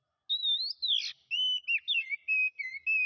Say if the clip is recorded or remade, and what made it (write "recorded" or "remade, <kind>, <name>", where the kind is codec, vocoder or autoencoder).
recorded